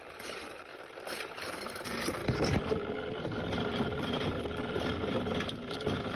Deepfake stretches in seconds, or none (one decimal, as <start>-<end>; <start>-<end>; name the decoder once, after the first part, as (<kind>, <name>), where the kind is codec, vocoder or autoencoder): 0.0-0.7 (vocoder, BigVGAN v2); 1.4-2.2; 5.5-6.2